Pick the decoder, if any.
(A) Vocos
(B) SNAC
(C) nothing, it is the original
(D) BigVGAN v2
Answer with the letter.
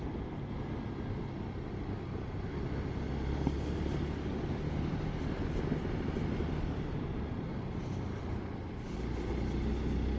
C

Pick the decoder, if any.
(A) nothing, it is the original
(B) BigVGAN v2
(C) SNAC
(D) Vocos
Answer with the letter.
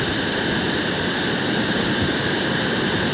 A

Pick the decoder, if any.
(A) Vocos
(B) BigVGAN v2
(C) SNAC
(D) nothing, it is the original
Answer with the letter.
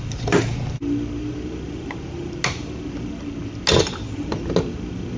D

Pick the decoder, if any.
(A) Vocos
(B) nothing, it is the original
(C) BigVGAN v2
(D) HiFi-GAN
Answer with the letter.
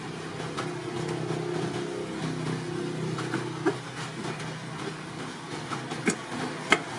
B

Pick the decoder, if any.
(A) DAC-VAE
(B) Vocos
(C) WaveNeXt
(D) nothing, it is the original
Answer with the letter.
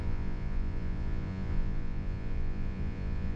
B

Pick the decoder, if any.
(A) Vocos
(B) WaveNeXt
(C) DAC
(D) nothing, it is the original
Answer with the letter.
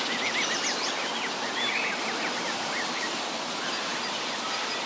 D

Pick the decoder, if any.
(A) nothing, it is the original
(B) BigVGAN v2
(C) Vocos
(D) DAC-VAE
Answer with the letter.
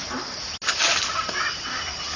A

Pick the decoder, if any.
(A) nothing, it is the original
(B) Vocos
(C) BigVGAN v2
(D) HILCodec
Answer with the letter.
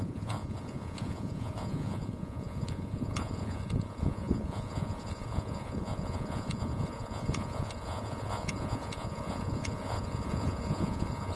B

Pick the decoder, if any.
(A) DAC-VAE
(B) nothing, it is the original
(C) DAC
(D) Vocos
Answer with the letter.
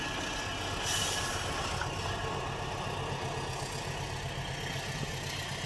B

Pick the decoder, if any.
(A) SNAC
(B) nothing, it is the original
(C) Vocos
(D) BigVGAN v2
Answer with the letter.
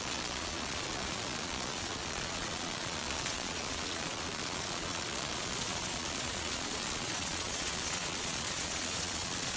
C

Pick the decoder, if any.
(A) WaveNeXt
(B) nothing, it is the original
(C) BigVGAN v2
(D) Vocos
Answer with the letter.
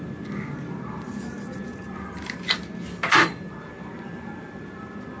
B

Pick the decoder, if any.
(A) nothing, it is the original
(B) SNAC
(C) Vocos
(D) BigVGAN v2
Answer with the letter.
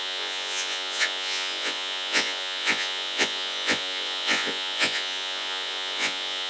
C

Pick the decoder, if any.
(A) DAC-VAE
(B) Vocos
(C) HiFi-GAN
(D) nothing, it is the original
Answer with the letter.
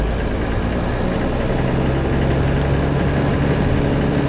D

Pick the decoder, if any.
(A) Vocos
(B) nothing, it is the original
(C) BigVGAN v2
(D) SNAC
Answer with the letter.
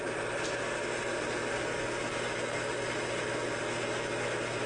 B